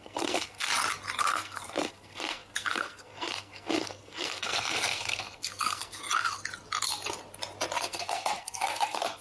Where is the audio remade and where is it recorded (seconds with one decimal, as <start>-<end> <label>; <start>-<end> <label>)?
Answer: 0.0-0.7 remade; 0.7-1.2 recorded; 1.2-6.0 remade; 6.0-7.8 recorded; 7.8-9.2 remade